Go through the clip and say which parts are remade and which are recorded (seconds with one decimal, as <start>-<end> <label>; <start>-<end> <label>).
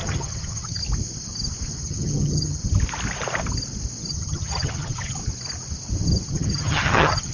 0.0-0.8 remade; 0.8-1.8 recorded; 1.8-2.6 remade; 2.6-4.1 recorded; 4.1-5.2 remade; 5.2-6.3 recorded; 6.3-7.3 remade